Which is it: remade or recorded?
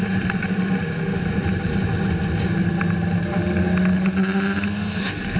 recorded